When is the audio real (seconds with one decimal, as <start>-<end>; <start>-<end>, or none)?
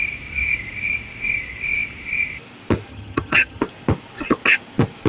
0.0-2.9; 3.6-5.1